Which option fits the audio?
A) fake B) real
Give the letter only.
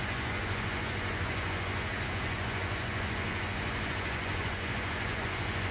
A